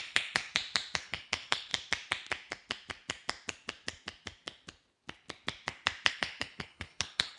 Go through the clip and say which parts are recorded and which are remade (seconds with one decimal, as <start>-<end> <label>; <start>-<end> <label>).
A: 0.0-0.5 remade; 0.5-1.0 recorded; 1.0-1.7 remade; 1.7-6.1 recorded; 6.1-7.4 remade